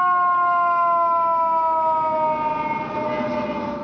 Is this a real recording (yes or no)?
yes